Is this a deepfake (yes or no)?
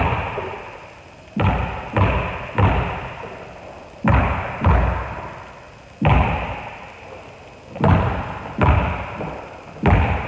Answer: no